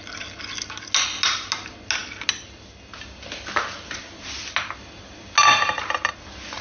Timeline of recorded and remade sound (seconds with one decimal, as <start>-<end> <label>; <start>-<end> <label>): 0.0-6.6 recorded